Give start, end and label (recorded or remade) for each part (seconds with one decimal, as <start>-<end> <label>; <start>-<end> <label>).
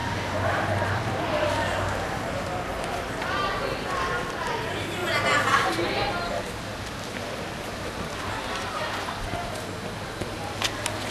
0.0-11.1 recorded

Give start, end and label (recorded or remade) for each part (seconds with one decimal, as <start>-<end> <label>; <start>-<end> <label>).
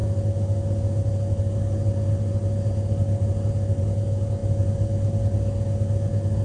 0.0-6.4 recorded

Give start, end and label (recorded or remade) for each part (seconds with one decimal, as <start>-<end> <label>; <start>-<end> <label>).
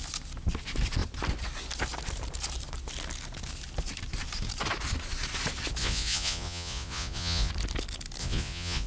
0.0-5.8 recorded; 5.8-7.5 remade; 7.5-8.2 recorded; 8.2-8.9 remade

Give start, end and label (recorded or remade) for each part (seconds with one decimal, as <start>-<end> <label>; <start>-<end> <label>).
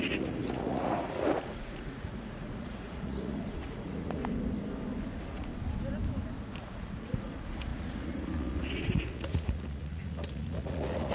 0.0-4.2 remade; 4.2-5.1 recorded; 5.1-5.5 remade; 5.5-6.6 recorded; 6.6-11.1 remade